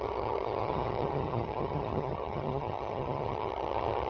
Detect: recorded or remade remade